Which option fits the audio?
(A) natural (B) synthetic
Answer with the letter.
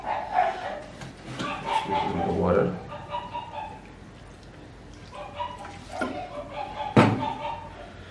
A